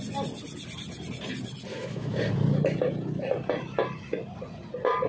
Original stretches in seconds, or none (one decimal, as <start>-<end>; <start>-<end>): 0.0-1.7; 2.2-5.1